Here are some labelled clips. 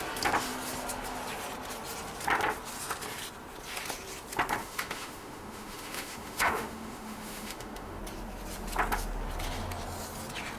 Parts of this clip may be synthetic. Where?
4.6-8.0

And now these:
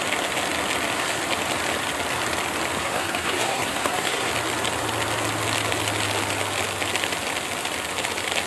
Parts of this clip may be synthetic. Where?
2.8-4.3

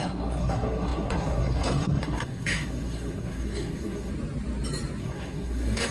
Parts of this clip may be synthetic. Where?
0.0-4.1; 5.0-5.9

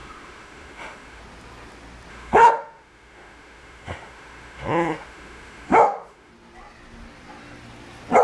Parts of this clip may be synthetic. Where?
0.0-1.2; 2.1-6.3

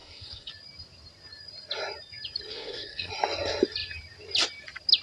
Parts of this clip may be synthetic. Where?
0.0-0.5; 2.5-3.1

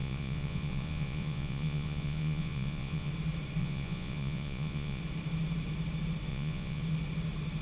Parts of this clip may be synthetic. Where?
0.0-3.1; 3.6-5.0; 6.3-6.8